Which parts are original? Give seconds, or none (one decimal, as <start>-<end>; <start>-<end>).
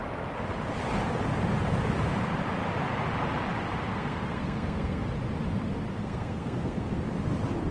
0.0-3.9; 5.1-6.0; 7.0-7.7